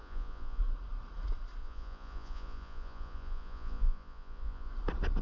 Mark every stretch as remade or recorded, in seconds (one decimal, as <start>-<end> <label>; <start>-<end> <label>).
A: 0.0-0.6 remade; 0.6-1.6 recorded; 1.6-4.7 remade; 4.7-5.2 recorded